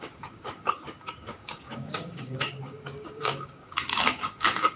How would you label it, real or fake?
fake